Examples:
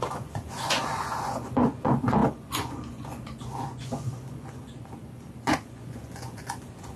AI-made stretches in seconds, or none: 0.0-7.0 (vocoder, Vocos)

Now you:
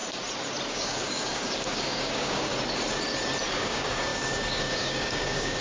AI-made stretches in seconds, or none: 0.7-2.5 (codec, DAC); 3.5-5.6

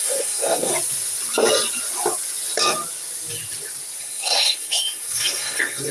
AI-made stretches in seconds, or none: 0.0-0.7 (codec, SNAC); 4.0-5.9